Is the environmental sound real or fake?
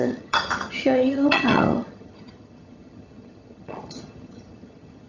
fake